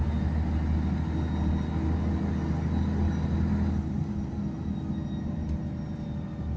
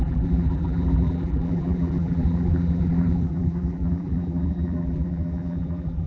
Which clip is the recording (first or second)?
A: first